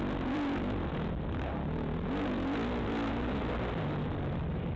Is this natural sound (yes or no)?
yes